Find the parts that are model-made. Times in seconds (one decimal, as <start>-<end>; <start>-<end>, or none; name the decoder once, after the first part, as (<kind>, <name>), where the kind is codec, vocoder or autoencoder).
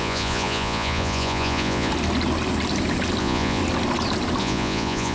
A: 0.0-1.9 (vocoder, Vocos); 3.2-3.6; 4.4-5.1